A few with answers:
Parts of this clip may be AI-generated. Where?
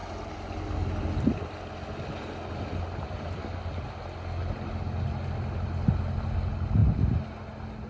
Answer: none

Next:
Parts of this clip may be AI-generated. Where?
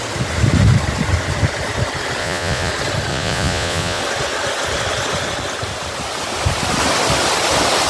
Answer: 2.2-2.7; 3.1-4.0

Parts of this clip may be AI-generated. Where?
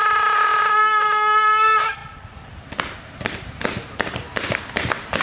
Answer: none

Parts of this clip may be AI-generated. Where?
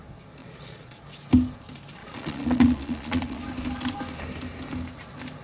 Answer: 0.4-1.0; 2.0-3.4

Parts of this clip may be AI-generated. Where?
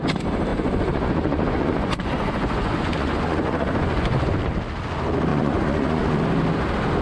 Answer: 0.5-4.4; 5.3-6.2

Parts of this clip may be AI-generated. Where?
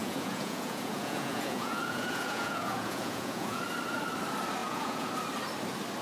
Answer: 0.0-3.6; 4.6-5.1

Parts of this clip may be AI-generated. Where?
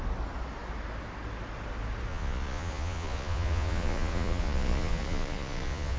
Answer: 2.1-6.0